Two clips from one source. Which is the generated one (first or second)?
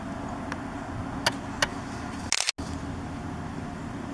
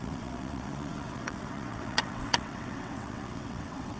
second